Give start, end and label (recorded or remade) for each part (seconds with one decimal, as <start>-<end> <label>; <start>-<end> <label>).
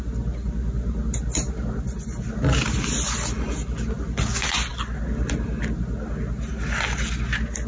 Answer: 0.0-7.7 recorded